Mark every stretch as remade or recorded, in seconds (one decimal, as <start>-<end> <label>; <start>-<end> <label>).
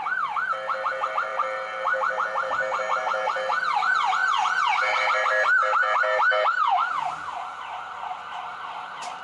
0.0-9.2 recorded